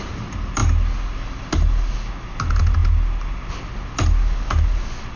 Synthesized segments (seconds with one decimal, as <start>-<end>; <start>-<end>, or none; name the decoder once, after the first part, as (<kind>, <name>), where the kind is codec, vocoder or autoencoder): none